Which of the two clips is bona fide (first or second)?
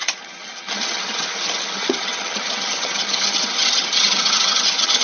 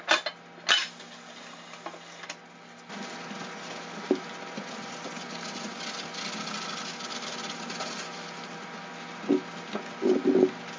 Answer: second